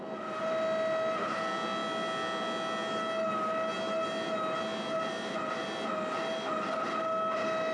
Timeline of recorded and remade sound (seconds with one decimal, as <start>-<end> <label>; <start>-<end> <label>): 0.0-7.7 recorded